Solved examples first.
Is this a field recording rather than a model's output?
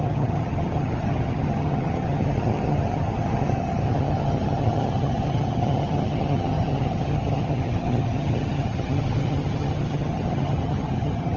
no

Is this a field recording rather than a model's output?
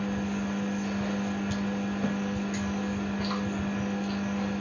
yes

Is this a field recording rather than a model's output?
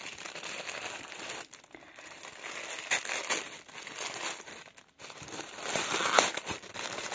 yes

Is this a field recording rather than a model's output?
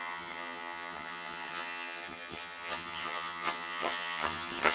no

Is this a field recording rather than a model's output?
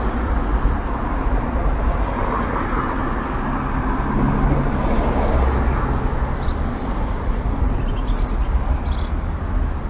yes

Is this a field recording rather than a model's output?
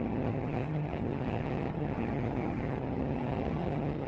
no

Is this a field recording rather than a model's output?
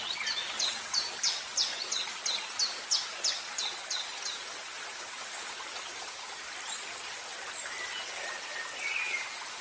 yes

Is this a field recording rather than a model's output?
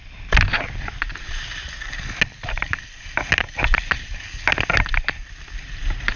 yes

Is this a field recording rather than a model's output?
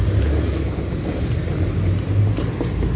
yes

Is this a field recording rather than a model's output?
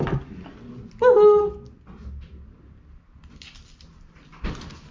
yes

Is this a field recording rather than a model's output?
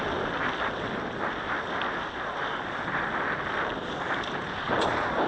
yes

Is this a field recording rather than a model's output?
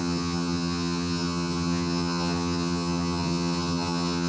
no